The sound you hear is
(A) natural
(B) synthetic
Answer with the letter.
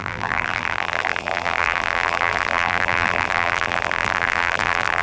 B